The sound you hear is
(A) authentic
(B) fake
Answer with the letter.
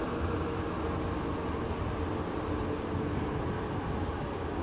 A